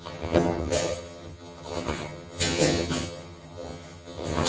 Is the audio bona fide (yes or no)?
no